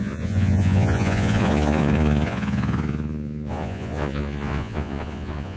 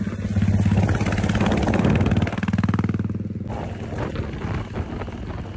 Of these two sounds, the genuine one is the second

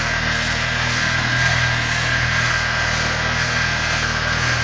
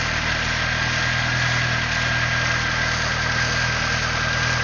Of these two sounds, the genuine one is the second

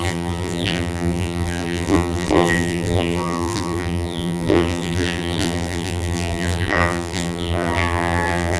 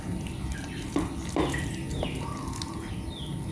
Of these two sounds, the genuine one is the second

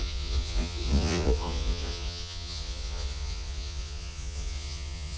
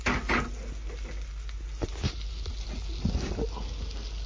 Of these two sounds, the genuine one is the second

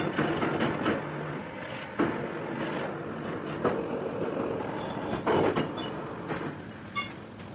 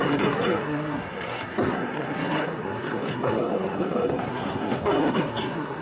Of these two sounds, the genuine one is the first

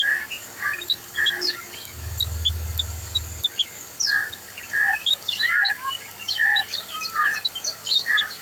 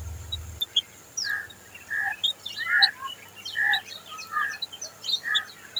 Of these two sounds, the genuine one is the second